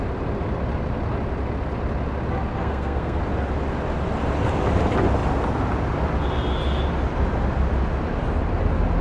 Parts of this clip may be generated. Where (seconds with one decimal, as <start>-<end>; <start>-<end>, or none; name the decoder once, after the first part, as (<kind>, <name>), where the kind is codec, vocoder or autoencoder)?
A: 2.5-3.2 (codec, SNAC)